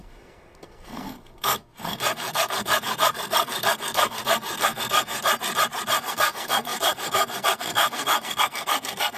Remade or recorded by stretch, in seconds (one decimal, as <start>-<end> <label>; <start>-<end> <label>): 0.0-5.2 remade; 5.2-6.0 recorded; 6.0-9.2 remade